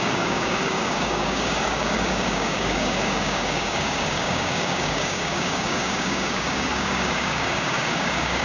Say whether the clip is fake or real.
fake